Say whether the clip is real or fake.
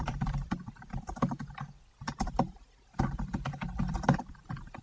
fake